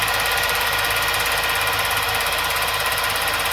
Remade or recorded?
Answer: recorded